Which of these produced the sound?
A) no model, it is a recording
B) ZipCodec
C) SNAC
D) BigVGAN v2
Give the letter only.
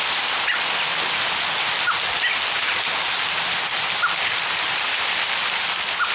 A